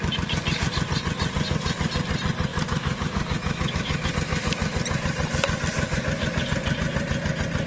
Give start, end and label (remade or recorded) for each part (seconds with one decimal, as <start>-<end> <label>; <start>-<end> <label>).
0.0-2.5 recorded; 2.5-4.1 remade; 4.1-7.7 recorded